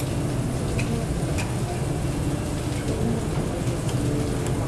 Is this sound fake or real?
real